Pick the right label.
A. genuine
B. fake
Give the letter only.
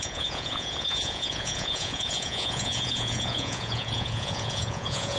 B